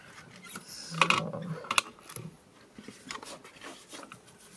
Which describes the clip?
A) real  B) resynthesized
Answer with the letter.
A